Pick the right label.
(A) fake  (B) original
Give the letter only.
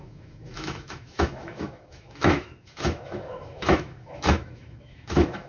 A